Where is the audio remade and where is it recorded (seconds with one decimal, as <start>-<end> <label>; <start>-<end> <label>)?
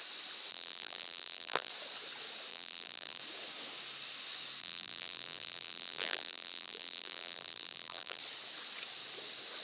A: 0.0-0.5 recorded; 0.5-1.7 remade; 1.7-2.5 recorded; 2.5-3.2 remade; 3.2-4.6 recorded; 4.6-8.2 remade; 8.2-9.6 recorded